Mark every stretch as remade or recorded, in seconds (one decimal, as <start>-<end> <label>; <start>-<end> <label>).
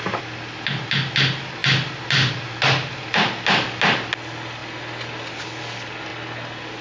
0.0-6.8 recorded